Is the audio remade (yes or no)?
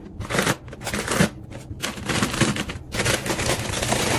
no